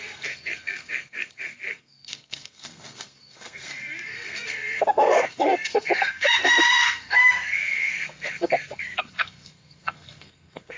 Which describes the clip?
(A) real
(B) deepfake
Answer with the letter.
B